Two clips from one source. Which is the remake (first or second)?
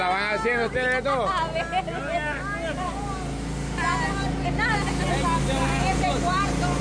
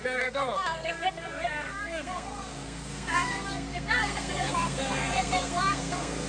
second